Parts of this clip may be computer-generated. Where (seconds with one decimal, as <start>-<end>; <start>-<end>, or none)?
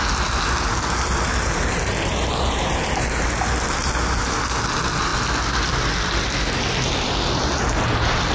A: 1.3-3.9